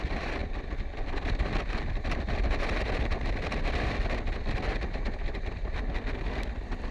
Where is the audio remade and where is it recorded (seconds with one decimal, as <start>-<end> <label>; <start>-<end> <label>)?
0.0-6.9 recorded